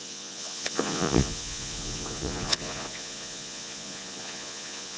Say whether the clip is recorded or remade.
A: remade